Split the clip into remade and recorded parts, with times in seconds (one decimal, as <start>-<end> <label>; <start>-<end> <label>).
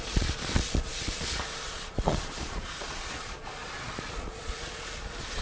0.0-5.4 remade